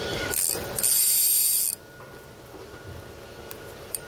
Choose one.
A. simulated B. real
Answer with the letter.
B